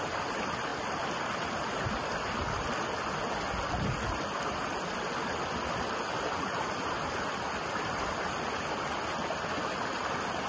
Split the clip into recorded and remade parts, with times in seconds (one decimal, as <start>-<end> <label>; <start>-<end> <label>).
0.0-10.5 recorded